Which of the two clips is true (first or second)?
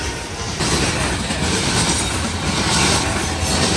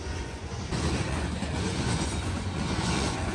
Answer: first